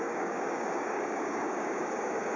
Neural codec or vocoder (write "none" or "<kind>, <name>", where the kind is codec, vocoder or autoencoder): codec, DAC